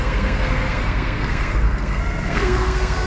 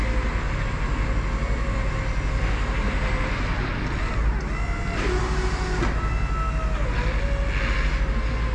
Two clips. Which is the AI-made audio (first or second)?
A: first